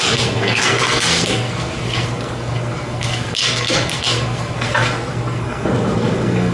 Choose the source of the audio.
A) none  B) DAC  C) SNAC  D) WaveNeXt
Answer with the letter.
C